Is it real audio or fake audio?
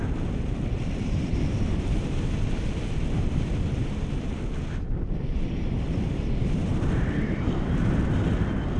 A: fake